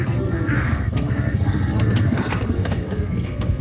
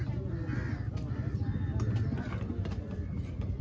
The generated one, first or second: first